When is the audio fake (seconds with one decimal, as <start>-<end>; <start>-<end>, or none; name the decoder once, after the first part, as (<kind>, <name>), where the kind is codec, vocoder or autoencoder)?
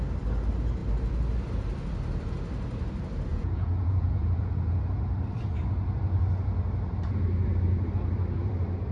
3.3-4.8 (vocoder, Vocos)